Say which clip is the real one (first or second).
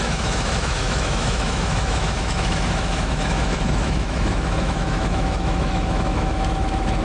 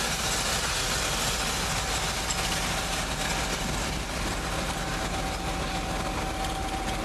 second